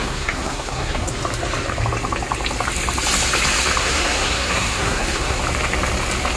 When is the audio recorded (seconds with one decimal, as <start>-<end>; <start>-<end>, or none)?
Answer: 1.1-3.8; 5.4-6.4